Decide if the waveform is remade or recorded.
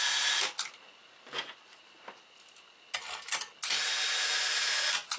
recorded